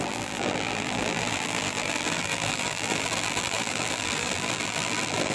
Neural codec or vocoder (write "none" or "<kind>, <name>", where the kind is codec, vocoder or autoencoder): vocoder, BigVGAN v2